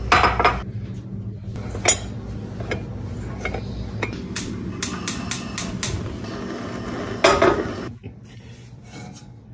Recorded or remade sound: recorded